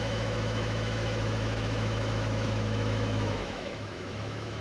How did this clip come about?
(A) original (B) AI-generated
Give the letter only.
B